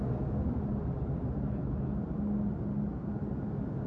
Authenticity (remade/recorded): recorded